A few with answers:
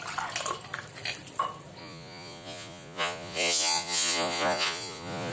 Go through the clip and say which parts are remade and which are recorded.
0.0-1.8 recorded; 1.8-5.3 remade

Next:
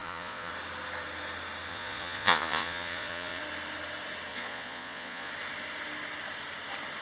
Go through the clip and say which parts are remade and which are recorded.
0.0-0.5 remade; 0.5-1.7 recorded; 1.7-3.4 remade; 3.4-4.3 recorded; 4.3-5.3 remade; 5.3-7.0 recorded

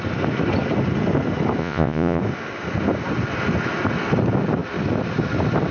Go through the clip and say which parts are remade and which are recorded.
0.0-1.6 recorded; 1.6-2.2 remade; 2.2-5.7 recorded

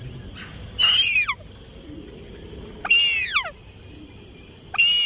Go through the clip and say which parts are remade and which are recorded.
0.0-5.1 recorded

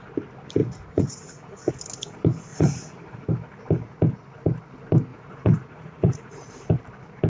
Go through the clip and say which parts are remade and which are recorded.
0.0-0.6 recorded; 0.6-1.7 remade; 1.7-2.5 recorded; 2.5-3.3 remade; 3.3-5.1 recorded; 5.1-6.5 remade; 6.5-7.3 recorded

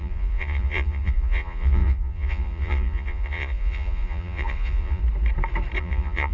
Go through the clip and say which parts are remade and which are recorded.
0.0-5.0 remade; 5.0-5.8 recorded; 5.8-6.3 remade

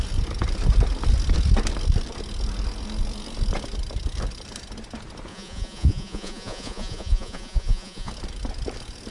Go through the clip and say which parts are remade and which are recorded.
0.0-5.3 recorded; 5.3-8.1 remade; 8.1-9.1 recorded